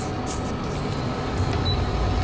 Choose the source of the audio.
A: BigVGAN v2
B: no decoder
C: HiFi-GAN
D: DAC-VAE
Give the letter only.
B